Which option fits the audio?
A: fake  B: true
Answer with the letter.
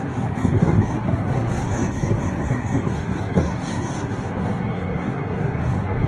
A